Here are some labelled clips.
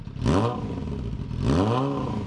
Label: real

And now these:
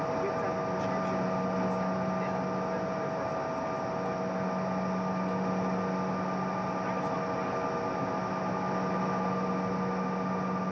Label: real